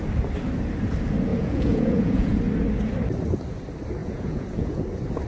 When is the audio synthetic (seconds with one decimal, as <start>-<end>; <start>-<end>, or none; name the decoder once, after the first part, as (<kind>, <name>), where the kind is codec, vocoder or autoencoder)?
1.3-2.4 (vocoder, Vocos); 4.0-4.8